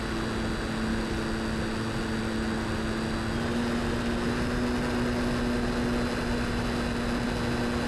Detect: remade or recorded recorded